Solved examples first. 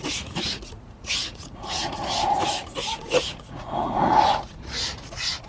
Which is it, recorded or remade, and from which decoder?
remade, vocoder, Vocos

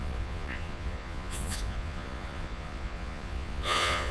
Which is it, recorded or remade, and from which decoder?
remade, vocoder, Vocos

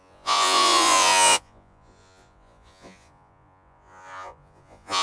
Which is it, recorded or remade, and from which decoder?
remade, vocoder, Vocos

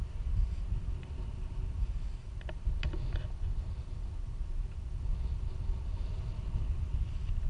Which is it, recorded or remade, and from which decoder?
recorded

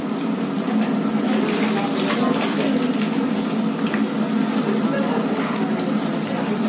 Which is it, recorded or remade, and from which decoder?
recorded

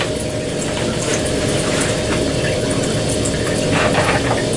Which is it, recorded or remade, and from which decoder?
recorded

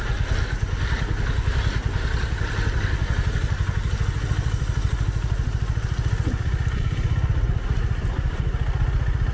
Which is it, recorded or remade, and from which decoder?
recorded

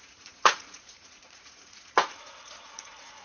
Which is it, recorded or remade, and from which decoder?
remade, vocoder, Vocos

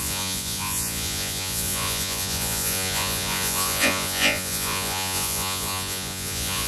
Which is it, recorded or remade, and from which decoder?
remade, vocoder, Vocos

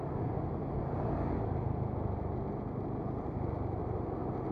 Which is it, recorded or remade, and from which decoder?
recorded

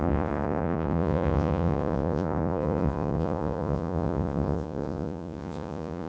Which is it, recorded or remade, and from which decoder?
remade, vocoder, Vocos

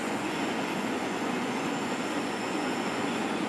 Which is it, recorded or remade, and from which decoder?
remade, vocoder, Vocos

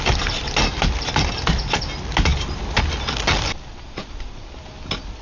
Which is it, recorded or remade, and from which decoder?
recorded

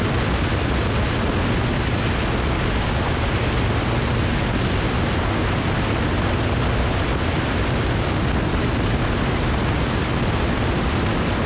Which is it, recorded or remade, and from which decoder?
recorded